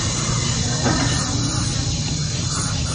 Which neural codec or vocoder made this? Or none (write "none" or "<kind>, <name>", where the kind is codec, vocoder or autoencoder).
none